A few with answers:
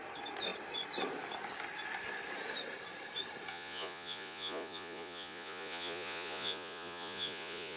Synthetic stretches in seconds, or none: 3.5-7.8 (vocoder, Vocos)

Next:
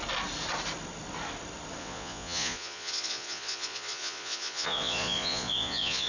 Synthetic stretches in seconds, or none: 1.8-6.1 (vocoder, Vocos)

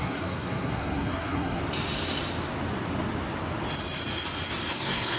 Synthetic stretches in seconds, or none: 0.0-1.6 (codec, SNAC); 4.7-5.2

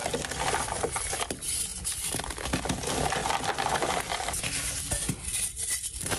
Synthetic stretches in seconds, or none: 0.0-1.7 (vocoder, BigVGAN v2); 2.6-6.2

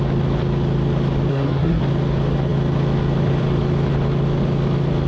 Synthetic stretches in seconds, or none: 1.3-1.8 (codec, SNAC)

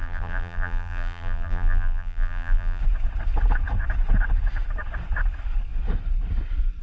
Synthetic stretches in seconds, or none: 0.0-2.8 (vocoder, BigVGAN v2)

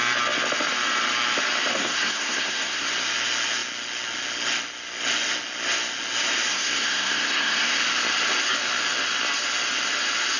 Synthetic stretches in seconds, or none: 1.7-2.9 (codec, SNAC); 6.5-7.8

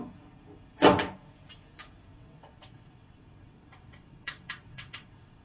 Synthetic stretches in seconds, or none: 2.1-5.4 (vocoder, WaveNeXt)